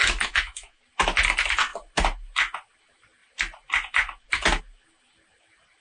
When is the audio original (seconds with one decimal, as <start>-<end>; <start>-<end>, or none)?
0.8-5.8